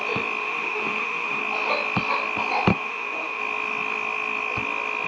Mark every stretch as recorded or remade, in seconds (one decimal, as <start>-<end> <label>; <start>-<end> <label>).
0.0-0.4 recorded; 0.4-1.4 remade; 1.4-2.7 recorded; 2.7-3.4 remade; 3.4-5.1 recorded